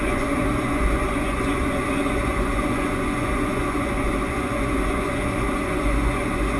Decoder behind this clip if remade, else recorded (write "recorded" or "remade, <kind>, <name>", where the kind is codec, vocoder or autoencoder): remade, vocoder, Vocos